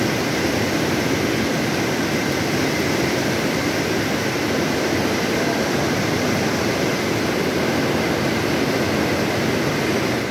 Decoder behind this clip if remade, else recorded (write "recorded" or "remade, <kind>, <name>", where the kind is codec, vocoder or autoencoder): recorded